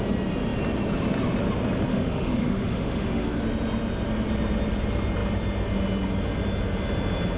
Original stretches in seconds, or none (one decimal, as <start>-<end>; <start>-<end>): 0.0-1.9; 3.4-7.4